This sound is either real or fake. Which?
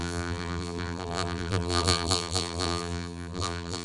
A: fake